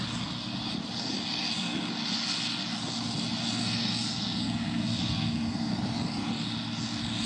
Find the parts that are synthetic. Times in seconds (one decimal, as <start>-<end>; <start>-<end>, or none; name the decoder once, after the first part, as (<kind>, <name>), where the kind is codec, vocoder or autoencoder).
1.4-1.9 (codec, SNAC); 3.6-5.7